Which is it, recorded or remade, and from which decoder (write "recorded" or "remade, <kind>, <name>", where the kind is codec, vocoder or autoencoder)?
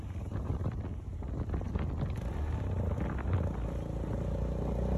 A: recorded